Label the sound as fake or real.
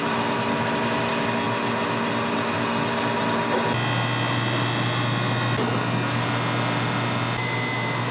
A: real